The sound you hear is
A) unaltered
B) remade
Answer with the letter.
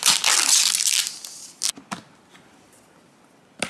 A